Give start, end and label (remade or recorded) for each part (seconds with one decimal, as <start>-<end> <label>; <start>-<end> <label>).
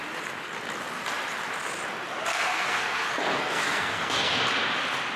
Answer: 0.0-2.3 recorded; 2.3-4.4 remade; 4.4-5.2 recorded